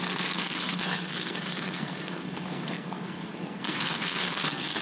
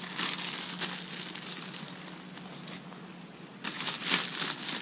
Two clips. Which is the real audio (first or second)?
second